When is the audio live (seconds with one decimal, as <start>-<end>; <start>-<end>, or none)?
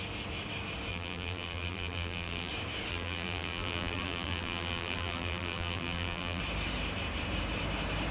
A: 0.0-0.9; 2.5-2.9; 6.4-8.1